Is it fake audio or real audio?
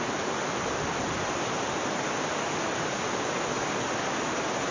real